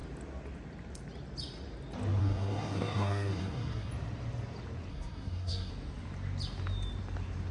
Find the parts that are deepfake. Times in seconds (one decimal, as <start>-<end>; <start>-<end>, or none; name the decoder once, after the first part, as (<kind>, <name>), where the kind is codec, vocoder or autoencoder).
2.2-3.9 (codec, SNAC); 4.9-5.7